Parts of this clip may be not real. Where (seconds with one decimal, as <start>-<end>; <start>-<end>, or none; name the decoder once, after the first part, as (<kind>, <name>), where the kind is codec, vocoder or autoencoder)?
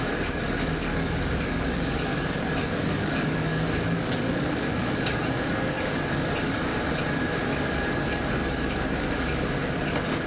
0.0-6.7 (codec, DAC); 7.5-10.3